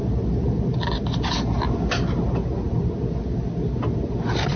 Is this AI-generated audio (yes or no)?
no